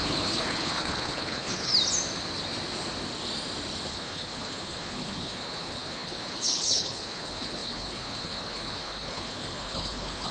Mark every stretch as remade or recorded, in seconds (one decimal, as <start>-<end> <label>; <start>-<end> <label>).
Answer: 0.0-1.7 remade; 1.7-3.9 recorded; 3.9-10.3 remade